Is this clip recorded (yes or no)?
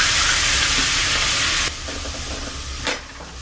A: yes